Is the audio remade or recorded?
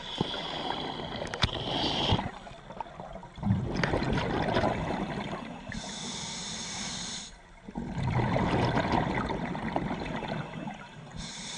recorded